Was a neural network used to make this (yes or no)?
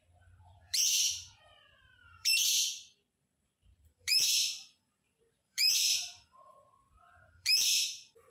yes